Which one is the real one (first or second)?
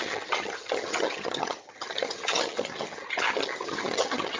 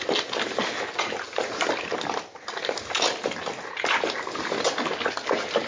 second